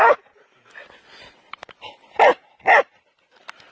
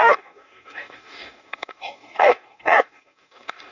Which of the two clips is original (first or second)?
first